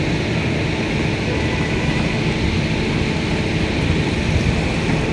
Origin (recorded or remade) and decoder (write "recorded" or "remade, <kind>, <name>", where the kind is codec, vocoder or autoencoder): recorded